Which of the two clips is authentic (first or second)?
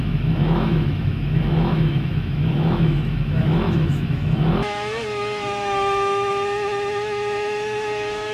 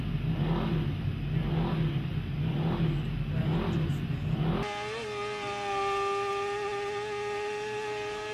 second